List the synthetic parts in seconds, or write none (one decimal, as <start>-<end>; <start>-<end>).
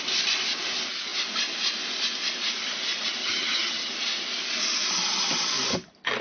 3.2-3.9